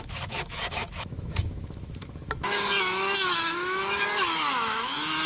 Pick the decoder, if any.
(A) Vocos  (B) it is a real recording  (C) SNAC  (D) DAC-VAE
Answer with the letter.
D